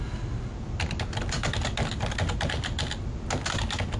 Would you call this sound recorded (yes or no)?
yes